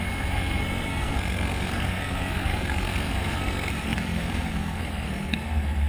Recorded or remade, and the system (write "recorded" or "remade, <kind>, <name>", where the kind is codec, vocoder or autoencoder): remade, codec, SNAC